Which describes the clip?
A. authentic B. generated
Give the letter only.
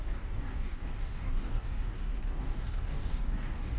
B